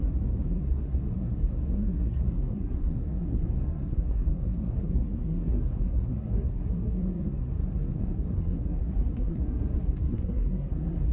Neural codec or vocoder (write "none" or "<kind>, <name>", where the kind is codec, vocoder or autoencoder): codec, SNAC